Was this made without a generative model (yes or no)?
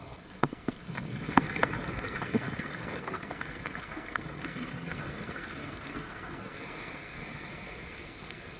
no